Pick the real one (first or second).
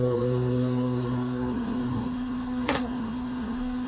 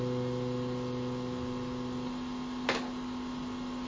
second